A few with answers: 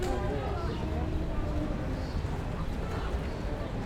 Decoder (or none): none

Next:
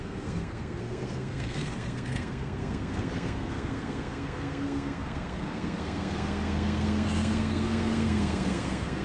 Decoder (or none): codec, SNAC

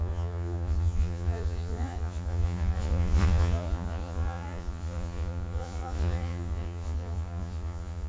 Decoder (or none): vocoder, Vocos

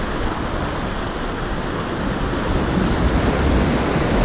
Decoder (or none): none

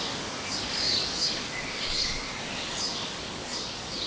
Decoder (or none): codec, DAC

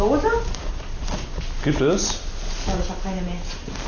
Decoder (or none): none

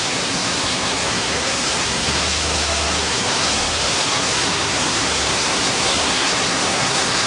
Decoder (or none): codec, SNAC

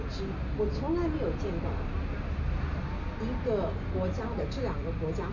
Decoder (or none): none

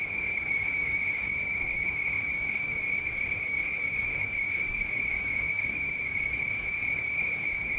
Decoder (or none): codec, DAC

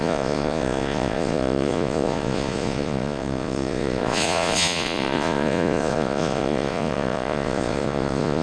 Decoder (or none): vocoder, Vocos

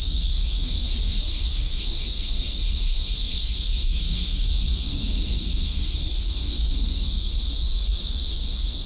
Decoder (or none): codec, SNAC